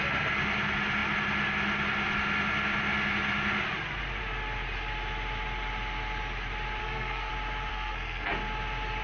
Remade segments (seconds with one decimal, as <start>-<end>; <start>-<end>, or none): 6.8-7.3; 7.7-8.3